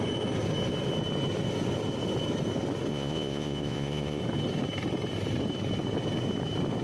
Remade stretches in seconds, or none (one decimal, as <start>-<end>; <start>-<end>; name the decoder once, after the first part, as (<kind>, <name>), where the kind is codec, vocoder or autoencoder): 2.9-4.2 (vocoder, Vocos)